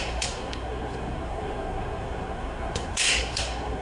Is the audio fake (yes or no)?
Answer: yes